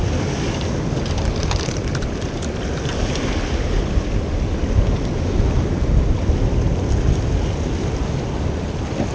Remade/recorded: recorded